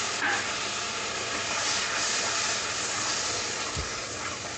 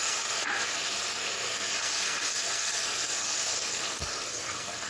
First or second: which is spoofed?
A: second